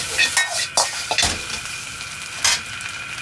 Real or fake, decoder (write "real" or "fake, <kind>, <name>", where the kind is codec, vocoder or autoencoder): real